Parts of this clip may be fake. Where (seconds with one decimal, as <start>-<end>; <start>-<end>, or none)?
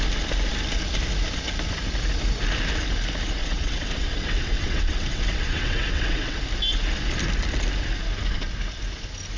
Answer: 3.4-6.4